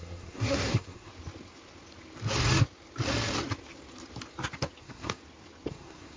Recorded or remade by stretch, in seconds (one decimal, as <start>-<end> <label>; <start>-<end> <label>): 0.0-1.1 remade; 1.1-4.8 recorded; 4.8-5.2 remade; 5.2-5.7 recorded; 5.7-6.2 remade